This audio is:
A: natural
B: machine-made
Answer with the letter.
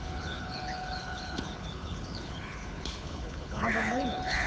B